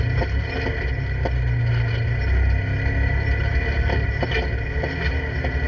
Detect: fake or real real